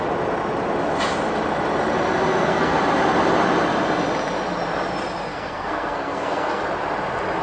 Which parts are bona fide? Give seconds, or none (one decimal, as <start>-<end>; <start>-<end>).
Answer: 0.0-2.3; 2.8-5.3; 6.6-7.4